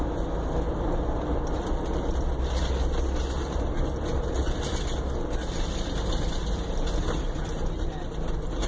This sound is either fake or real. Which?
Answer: real